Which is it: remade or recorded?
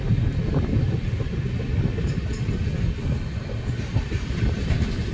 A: recorded